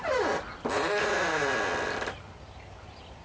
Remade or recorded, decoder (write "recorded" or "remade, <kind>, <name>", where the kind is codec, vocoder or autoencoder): recorded